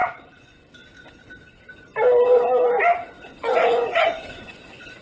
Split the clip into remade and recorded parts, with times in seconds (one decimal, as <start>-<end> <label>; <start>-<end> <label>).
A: 0.0-0.7 remade; 0.7-3.0 recorded; 3.0-5.0 remade